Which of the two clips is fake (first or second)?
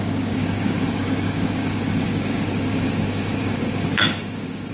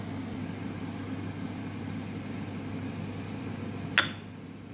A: first